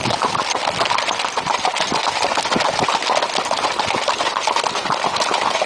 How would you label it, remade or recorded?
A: recorded